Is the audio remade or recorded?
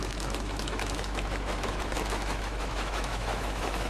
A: remade